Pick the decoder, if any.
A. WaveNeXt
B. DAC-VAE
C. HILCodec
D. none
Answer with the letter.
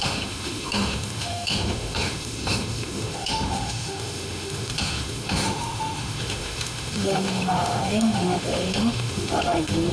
B